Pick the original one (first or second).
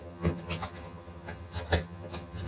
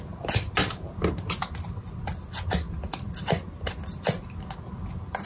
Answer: second